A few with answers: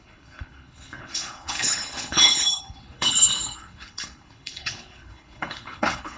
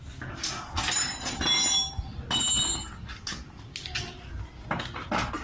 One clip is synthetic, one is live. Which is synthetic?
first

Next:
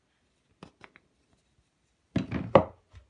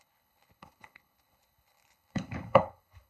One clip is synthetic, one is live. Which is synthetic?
second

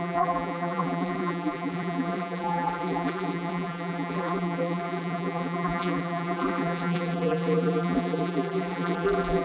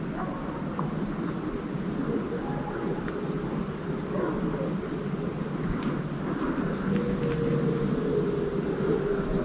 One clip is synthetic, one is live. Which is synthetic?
first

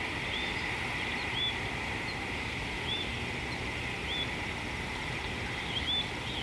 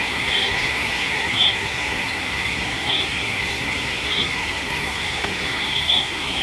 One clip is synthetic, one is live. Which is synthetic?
second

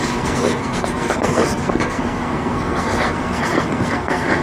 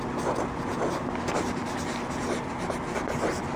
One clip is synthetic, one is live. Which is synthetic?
first